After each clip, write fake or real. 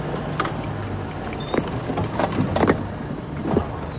real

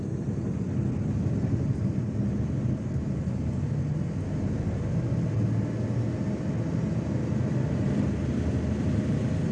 real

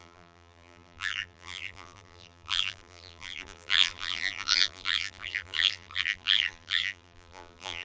fake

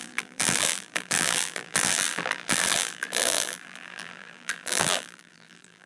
fake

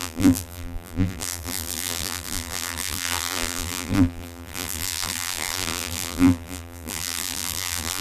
fake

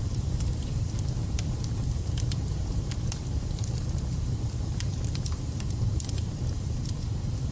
fake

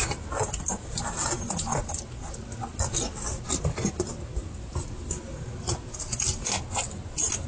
real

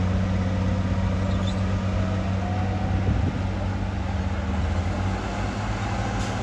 real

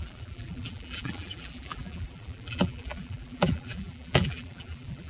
fake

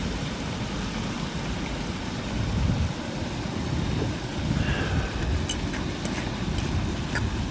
real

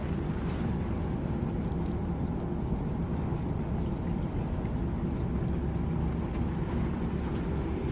real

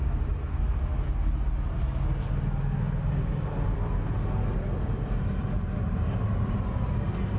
real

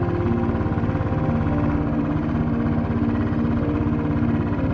real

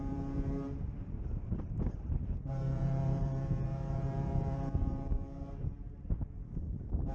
fake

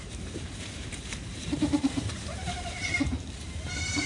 fake